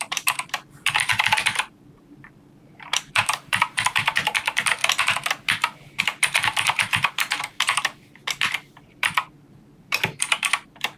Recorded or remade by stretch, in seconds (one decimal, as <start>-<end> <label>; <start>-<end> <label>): 0.0-4.8 remade; 4.8-6.0 recorded; 6.0-8.2 remade; 8.2-8.8 recorded; 8.8-11.0 remade